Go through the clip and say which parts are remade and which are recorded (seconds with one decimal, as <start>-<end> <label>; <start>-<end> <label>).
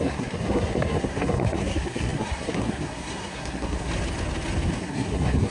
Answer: 0.0-3.9 remade; 3.9-4.8 recorded; 4.8-5.5 remade